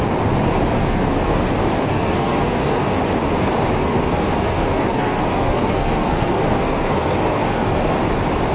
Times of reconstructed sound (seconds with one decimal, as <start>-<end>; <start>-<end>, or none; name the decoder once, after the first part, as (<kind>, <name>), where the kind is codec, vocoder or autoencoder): 0.8-1.4 (codec, SNAC); 1.9-2.8; 3.8-7.8